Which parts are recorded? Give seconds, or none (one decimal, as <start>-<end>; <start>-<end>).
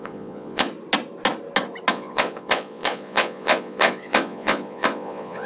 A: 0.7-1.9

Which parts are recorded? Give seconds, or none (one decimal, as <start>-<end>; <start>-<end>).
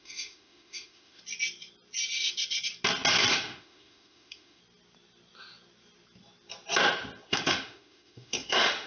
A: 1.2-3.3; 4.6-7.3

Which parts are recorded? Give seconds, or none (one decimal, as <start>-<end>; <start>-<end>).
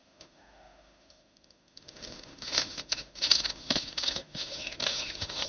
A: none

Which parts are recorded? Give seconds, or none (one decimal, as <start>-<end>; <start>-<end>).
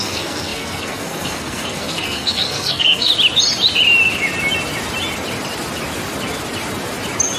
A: 3.1-7.4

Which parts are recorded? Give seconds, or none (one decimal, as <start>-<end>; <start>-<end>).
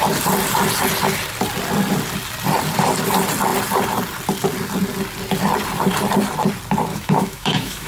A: 0.0-6.9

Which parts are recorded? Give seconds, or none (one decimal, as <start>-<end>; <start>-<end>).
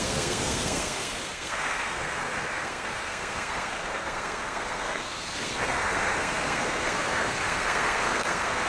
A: none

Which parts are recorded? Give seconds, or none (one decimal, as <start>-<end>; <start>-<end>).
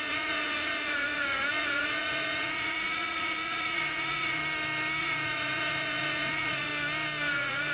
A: 4.4-5.0; 6.7-7.3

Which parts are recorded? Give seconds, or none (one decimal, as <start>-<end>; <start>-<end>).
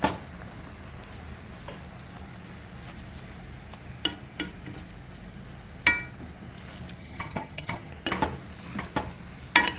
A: 0.0-7.0; 7.9-9.8